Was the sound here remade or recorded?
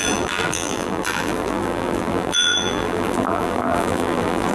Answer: remade